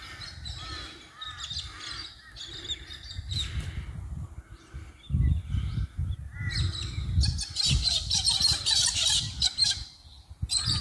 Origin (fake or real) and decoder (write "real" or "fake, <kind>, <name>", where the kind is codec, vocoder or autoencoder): real